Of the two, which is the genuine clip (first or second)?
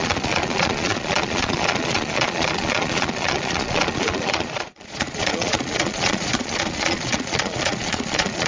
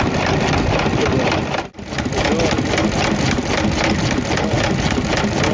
second